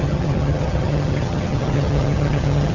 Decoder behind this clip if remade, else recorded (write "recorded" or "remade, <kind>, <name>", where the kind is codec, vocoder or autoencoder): remade, vocoder, HiFi-GAN